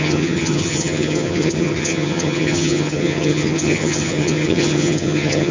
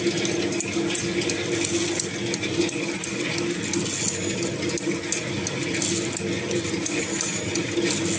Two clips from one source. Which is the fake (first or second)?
first